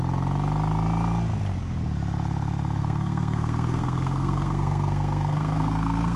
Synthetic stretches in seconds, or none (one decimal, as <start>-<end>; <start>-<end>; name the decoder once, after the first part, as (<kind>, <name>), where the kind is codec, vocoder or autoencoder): 2.8-6.2 (codec, SNAC)